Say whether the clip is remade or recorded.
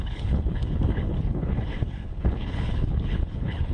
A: remade